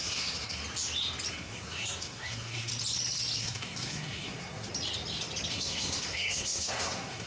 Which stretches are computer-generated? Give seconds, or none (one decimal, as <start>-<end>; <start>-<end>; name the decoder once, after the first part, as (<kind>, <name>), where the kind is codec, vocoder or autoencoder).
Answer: 0.0-0.6 (codec, SNAC); 1.3-2.7; 3.4-4.7; 5.5-7.3

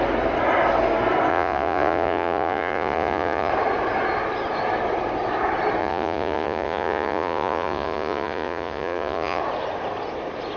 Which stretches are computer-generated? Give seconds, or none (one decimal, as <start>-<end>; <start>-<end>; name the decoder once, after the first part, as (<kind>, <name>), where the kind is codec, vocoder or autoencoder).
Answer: 1.3-3.5 (vocoder, Vocos); 5.8-9.4

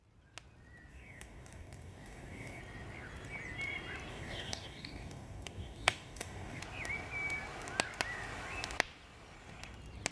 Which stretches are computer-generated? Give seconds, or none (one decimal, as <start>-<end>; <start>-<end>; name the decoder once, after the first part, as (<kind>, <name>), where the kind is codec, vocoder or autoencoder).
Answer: 0.9-2.6 (codec, DAC); 4.1-6.6